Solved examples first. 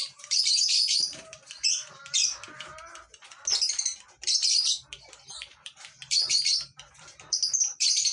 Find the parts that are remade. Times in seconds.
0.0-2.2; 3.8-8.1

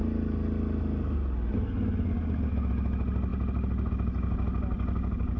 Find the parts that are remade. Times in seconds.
none

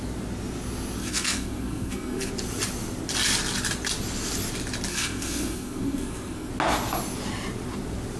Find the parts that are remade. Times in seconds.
1.0-2.3; 4.9-6.5

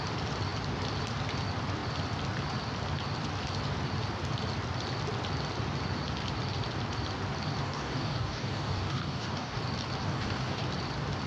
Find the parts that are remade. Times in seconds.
7.6-9.6; 10.0-10.6

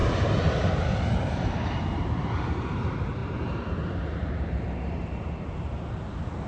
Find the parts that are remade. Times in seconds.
0.0-6.5

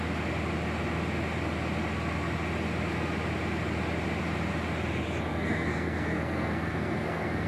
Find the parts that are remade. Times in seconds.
5.3-7.5

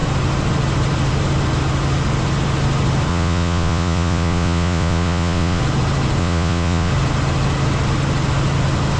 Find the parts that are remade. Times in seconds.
3.1-5.6; 6.2-6.9

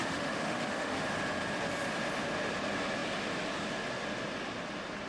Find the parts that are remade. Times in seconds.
0.0-1.0